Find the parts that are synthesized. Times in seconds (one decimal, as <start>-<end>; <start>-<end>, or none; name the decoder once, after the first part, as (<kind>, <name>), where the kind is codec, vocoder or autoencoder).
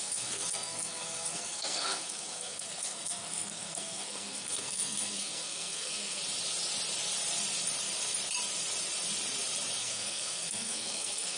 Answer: 0.0-6.2 (codec, SNAC); 9.8-11.4